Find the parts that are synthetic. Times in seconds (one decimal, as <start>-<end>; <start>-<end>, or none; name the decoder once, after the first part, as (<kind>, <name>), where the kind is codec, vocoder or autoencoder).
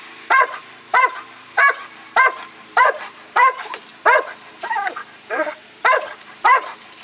0.0-3.9 (vocoder, BigVGAN v2); 4.5-7.0